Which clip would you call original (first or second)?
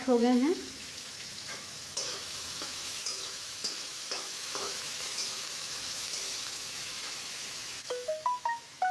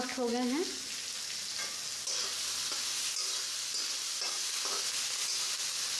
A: second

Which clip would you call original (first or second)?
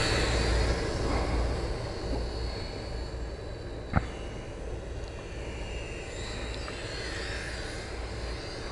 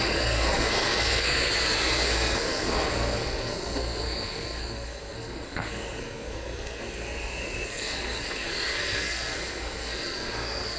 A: first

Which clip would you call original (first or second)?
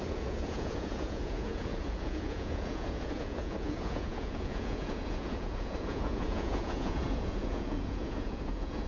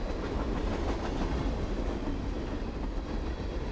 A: second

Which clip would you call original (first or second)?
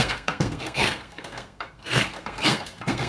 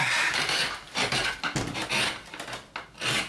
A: second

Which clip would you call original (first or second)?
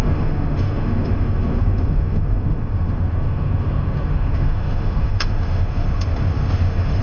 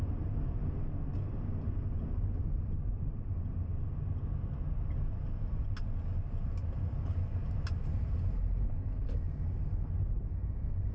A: second